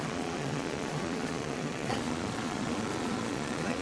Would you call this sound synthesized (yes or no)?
yes